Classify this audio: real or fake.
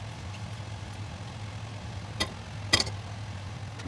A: real